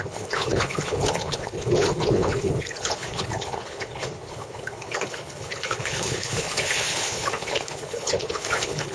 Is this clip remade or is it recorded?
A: remade